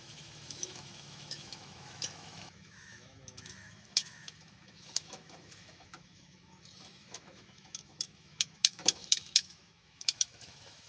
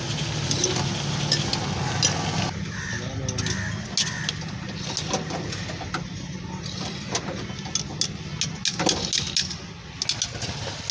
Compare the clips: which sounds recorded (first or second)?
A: second